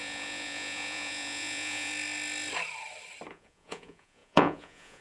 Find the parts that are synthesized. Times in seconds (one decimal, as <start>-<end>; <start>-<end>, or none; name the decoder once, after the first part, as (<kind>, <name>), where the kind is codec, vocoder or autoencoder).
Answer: 0.0-1.9 (vocoder, Vocos); 3.3-5.0